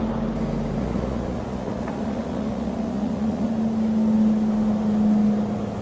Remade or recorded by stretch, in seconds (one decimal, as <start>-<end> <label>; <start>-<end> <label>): 0.0-0.8 recorded; 0.8-3.5 remade; 3.5-5.8 recorded